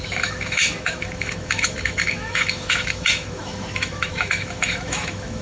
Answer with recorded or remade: remade